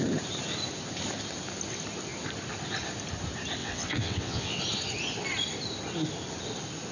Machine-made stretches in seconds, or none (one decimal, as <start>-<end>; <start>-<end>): 3.6-4.6